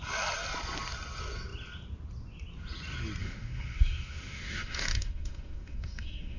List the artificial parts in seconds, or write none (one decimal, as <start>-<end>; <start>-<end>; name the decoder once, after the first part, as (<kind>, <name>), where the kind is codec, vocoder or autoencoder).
3.2-6.4 (autoencoder, DAC-VAE)